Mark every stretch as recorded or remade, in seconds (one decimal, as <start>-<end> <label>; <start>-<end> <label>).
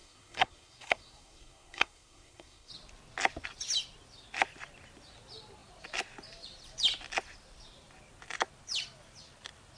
0.0-2.7 remade; 2.7-9.8 recorded